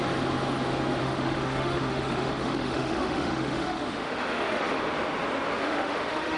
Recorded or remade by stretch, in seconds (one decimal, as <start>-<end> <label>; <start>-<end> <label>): 0.0-1.0 recorded; 1.0-4.8 remade; 4.8-5.6 recorded; 5.6-6.4 remade